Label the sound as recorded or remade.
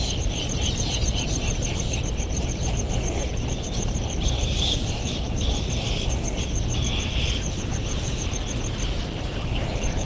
remade